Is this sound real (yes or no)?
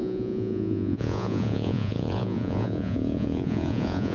no